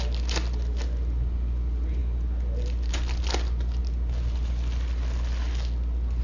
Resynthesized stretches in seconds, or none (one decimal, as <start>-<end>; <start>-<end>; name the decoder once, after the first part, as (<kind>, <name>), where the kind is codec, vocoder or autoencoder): none